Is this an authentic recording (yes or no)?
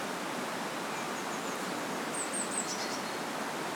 yes